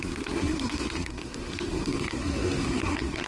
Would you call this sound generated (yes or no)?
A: yes